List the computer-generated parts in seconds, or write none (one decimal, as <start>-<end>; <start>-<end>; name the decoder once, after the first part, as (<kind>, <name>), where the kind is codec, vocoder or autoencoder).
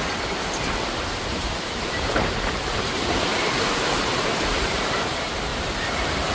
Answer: 1.3-5.1 (vocoder, BigVGAN v2); 5.5-6.3